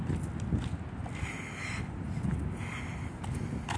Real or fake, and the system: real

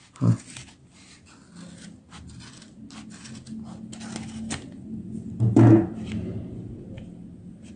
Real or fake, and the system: real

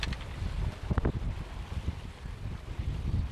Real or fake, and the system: real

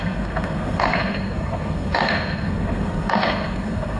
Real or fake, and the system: fake, codec, SNAC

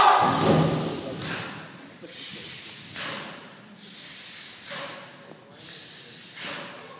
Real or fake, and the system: real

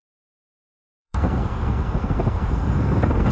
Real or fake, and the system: fake, codec, SNAC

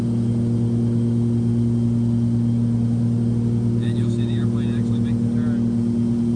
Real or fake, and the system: real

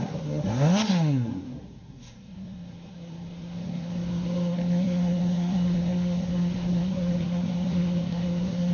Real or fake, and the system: fake, codec, SNAC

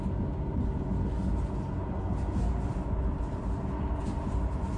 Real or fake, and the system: real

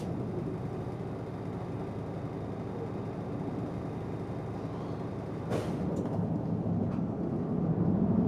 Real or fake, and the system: real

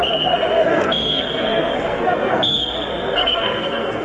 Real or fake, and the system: fake, codec, SNAC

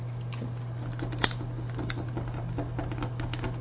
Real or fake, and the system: real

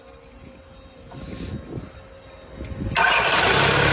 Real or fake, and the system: real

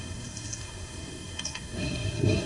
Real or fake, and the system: fake, codec, SNAC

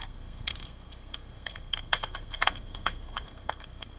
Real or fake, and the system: fake, codec, SNAC